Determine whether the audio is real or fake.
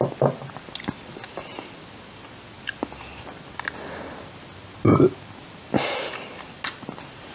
real